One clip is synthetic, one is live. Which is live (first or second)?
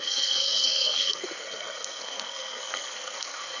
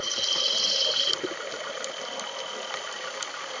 second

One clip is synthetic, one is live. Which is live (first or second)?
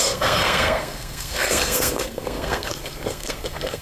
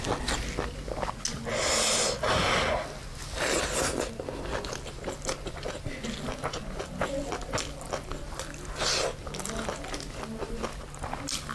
second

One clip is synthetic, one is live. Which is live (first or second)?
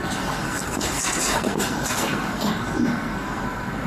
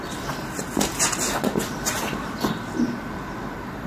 second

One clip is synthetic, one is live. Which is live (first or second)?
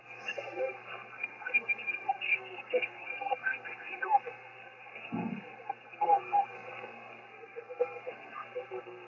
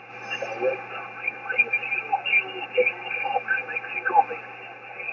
second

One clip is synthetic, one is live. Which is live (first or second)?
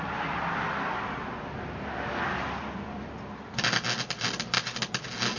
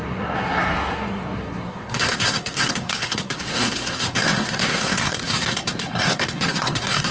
first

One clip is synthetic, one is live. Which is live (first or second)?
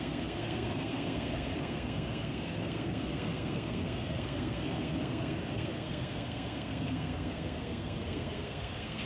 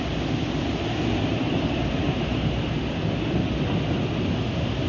second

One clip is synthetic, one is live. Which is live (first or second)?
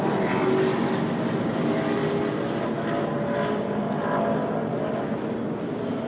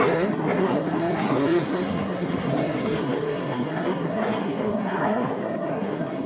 first